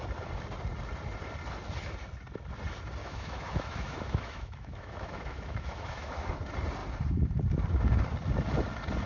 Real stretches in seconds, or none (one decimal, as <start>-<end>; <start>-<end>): 0.0-3.0; 6.3-9.1